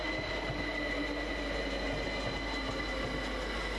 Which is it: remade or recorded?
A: recorded